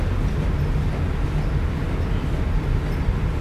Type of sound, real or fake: real